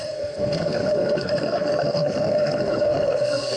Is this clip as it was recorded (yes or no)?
no